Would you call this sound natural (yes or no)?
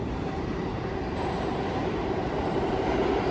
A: no